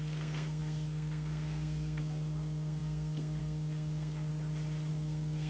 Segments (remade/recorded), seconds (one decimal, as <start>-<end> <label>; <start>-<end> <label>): 0.0-4.3 remade; 4.3-4.9 recorded; 4.9-5.5 remade